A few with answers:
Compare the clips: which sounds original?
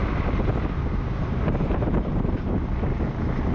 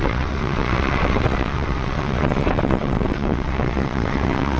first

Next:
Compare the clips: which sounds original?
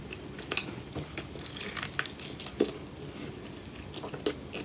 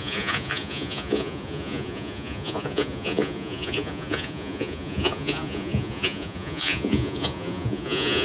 first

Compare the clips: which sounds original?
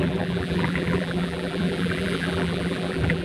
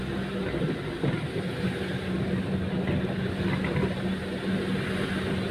second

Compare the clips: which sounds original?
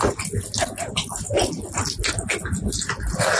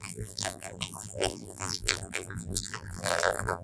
first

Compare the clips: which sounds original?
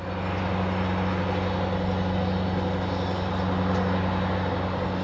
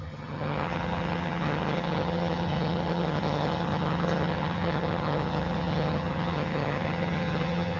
first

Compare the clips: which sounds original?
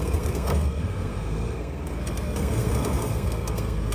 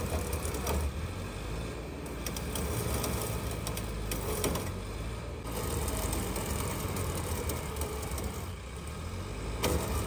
second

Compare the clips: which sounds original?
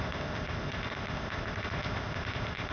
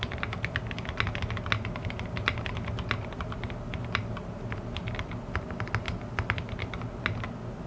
second